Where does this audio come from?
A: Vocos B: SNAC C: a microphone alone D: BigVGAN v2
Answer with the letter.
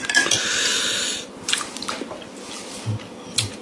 C